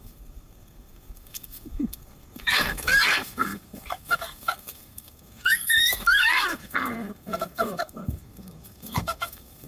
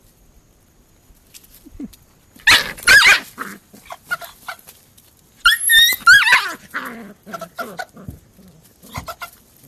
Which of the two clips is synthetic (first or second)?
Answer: first